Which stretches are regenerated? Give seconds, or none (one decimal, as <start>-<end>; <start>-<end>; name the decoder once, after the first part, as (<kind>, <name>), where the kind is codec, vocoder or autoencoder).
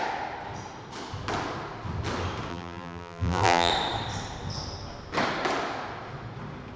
2.5-3.7 (vocoder, BigVGAN v2)